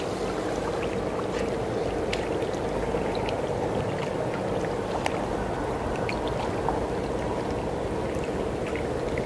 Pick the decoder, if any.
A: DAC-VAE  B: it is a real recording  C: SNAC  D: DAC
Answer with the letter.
B